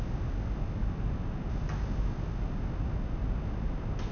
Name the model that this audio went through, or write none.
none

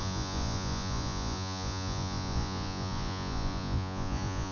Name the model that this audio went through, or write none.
vocoder, Vocos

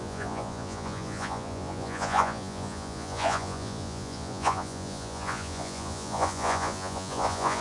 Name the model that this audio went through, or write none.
vocoder, Vocos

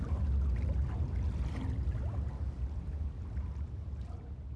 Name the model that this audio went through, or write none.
none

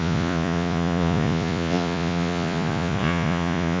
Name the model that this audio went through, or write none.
vocoder, Vocos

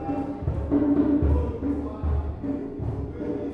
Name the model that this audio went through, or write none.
none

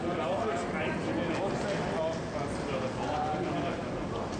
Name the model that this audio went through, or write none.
none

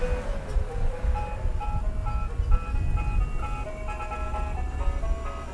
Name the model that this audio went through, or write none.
none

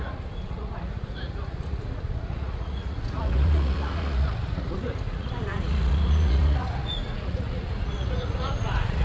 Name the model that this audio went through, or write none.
vocoder, Vocos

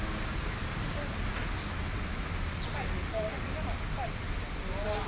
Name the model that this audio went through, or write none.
none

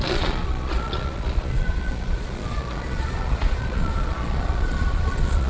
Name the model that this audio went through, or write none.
vocoder, Vocos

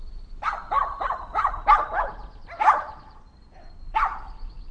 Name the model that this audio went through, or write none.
none